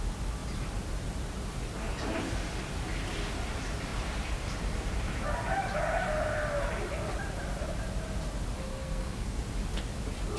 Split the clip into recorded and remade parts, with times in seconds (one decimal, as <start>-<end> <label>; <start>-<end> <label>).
0.0-8.7 recorded; 8.7-9.4 remade; 9.4-10.4 recorded